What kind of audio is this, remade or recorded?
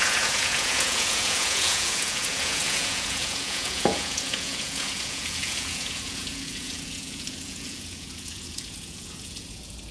remade